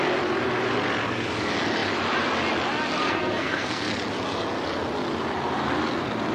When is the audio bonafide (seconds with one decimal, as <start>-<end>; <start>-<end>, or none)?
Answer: 0.0-3.0; 3.9-6.3